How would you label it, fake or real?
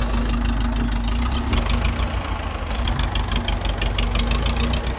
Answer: real